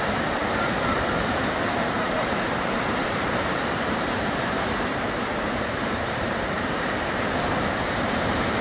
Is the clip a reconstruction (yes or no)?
yes